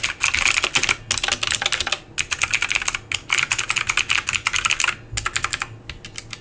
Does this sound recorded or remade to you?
recorded